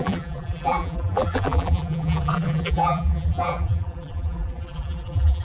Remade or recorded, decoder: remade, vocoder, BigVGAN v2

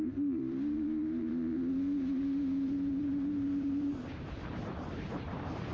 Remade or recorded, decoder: remade, vocoder, BigVGAN v2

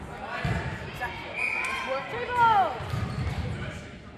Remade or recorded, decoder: recorded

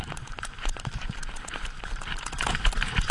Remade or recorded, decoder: remade, vocoder, BigVGAN v2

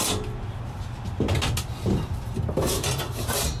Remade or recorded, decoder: recorded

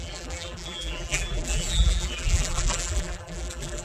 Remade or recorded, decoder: remade, vocoder, BigVGAN v2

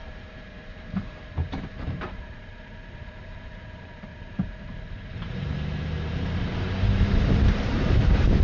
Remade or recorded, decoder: remade, vocoder, BigVGAN v2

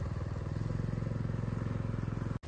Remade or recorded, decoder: recorded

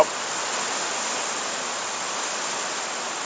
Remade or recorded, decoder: recorded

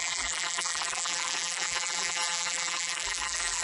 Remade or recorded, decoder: remade, vocoder, BigVGAN v2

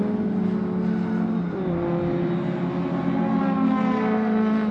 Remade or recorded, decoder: recorded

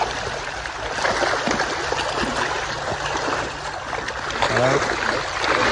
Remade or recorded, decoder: recorded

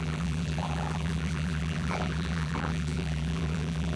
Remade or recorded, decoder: remade, vocoder, BigVGAN v2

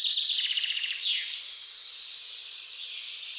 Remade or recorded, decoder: recorded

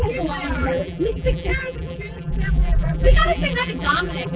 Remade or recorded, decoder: remade, vocoder, BigVGAN v2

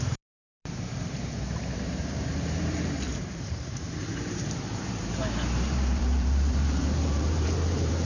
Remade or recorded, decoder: remade, vocoder, BigVGAN v2